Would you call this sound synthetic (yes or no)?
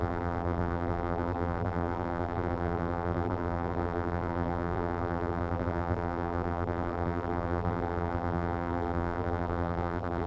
yes